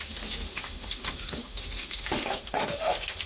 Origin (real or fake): fake